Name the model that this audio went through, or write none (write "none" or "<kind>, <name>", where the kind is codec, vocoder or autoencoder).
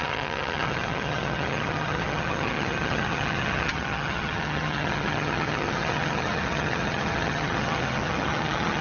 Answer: vocoder, HiFi-GAN